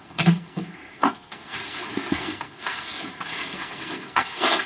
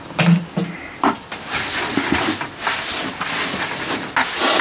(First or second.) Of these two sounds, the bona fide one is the second